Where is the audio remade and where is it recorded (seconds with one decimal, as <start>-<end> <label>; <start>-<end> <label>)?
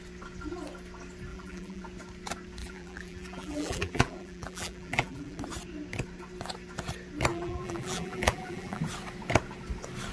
0.0-1.3 recorded; 1.3-1.8 remade; 1.8-2.6 recorded; 2.6-5.4 remade; 5.4-7.3 recorded; 7.3-8.8 remade; 8.8-10.1 recorded